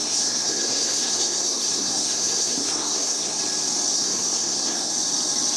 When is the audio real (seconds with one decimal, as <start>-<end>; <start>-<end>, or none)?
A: 3.4-3.9; 4.9-5.6